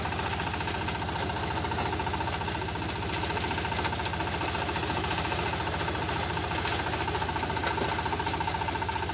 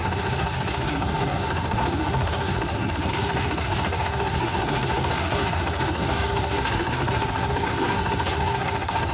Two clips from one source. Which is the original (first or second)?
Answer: first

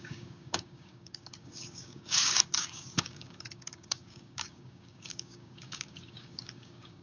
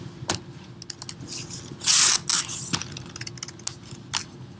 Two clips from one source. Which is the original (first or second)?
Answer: second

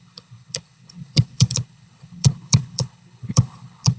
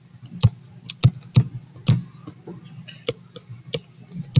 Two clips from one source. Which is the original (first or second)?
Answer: second